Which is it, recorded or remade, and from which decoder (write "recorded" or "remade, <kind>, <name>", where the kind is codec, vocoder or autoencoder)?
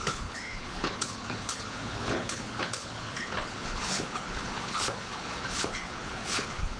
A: remade, codec, HILCodec